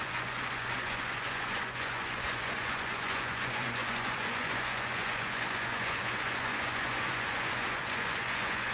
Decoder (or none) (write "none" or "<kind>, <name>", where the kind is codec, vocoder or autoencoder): vocoder, Vocos